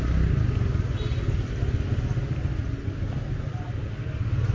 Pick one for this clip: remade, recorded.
recorded